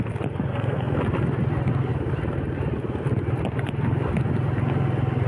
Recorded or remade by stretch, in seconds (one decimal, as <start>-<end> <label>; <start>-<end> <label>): 0.0-0.5 recorded; 0.5-1.0 remade; 1.0-5.3 recorded